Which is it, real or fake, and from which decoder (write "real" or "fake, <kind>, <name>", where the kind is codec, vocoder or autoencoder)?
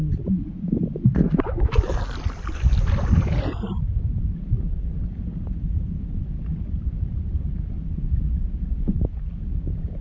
real